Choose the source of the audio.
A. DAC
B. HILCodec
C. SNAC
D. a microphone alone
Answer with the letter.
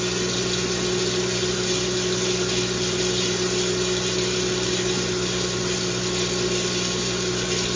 D